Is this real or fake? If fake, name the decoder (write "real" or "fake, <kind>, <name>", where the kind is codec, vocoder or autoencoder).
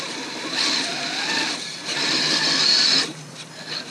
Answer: real